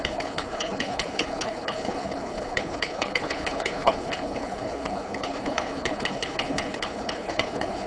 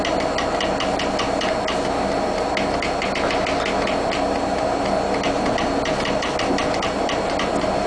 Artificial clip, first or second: first